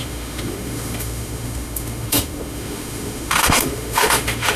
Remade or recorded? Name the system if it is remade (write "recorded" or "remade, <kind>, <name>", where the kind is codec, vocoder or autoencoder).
remade, autoencoder, DAC-VAE